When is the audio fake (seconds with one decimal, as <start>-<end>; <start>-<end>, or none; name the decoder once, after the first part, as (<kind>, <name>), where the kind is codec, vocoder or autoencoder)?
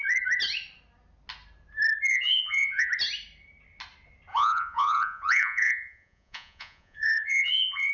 2.1-2.9 (vocoder, Vocos); 4.3-7.9